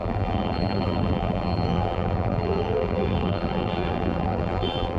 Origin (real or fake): fake